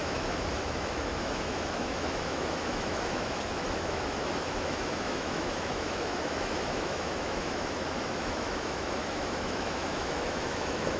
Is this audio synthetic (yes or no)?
yes